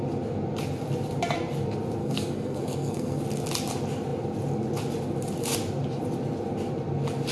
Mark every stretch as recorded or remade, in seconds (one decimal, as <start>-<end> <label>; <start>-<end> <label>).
0.0-2.0 recorded; 2.0-3.2 remade; 3.2-7.3 recorded